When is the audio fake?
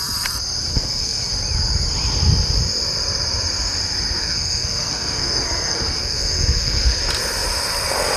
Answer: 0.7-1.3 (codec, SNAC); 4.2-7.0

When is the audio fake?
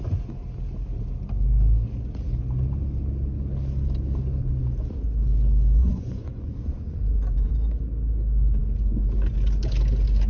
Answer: 5.8-7.5 (vocoder, Vocos)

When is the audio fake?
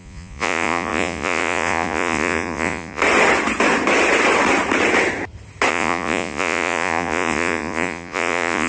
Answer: 0.0-3.0 (vocoder, Vocos); 5.7-8.7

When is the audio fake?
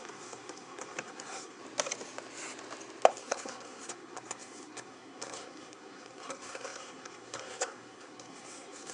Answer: 0.0-1.6 (codec, SNAC); 3.1-8.9